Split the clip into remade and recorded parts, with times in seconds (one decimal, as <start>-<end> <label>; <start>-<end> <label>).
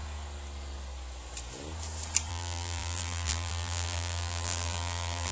0.0-2.3 recorded; 2.3-5.3 remade